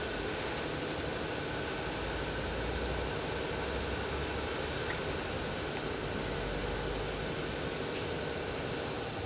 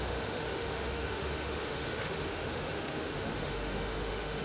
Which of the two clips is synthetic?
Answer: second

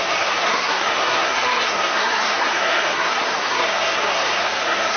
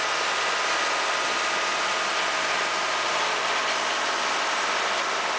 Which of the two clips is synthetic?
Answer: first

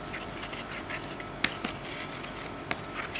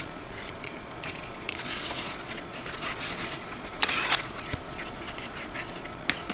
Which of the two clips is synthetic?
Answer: second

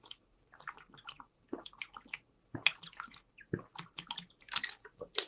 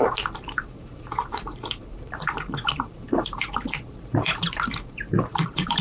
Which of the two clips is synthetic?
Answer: second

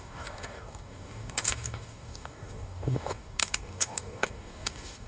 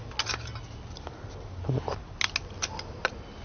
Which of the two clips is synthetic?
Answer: first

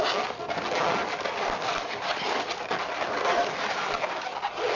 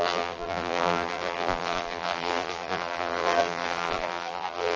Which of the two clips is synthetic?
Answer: second